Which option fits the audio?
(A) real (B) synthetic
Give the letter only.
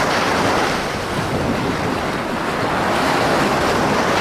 A